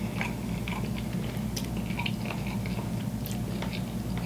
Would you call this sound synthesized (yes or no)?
no